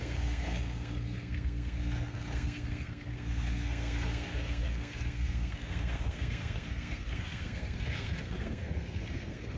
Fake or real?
fake